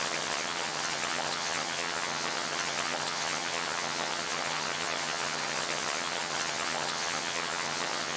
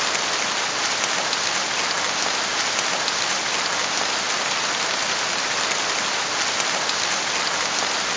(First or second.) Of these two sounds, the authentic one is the second